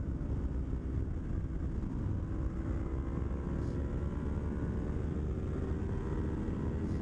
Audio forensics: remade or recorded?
recorded